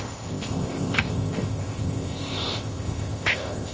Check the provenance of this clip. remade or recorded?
remade